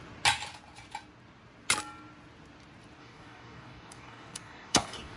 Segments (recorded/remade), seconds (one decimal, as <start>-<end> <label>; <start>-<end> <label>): 0.0-3.0 recorded; 3.0-5.2 remade